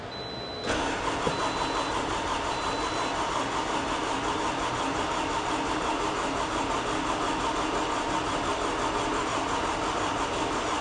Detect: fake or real real